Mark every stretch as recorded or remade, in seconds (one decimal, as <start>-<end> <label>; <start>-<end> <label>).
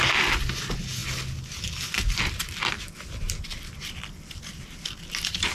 0.0-5.5 recorded